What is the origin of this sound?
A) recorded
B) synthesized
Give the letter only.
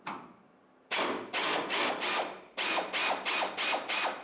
A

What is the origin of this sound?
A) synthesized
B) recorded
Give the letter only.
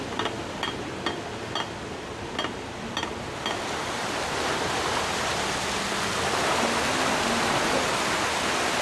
B